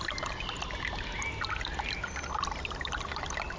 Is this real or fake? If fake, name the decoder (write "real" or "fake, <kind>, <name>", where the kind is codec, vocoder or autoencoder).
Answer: real